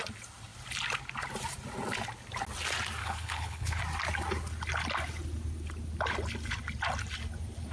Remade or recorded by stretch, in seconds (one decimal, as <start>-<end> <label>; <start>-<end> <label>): 0.0-3.0 recorded; 3.0-3.8 remade; 3.8-7.7 recorded